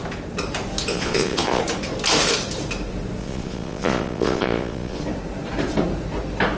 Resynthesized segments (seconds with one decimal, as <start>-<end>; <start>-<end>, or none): 0.9-1.6; 3.2-5.0